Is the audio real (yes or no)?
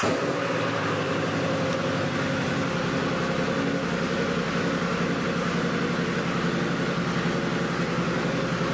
yes